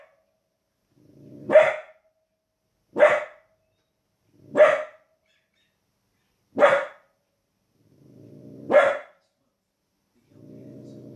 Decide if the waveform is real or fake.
real